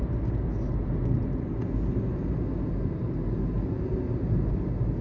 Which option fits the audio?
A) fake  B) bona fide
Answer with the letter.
B